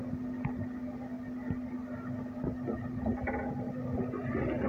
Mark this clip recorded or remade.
recorded